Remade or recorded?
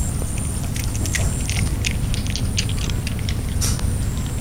recorded